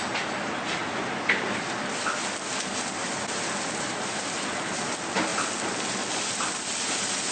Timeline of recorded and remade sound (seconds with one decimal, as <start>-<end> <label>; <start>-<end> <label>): 0.0-7.3 recorded